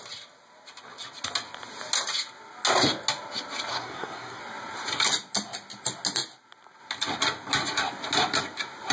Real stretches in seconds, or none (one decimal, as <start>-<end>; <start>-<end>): 0.0-3.7; 4.4-8.9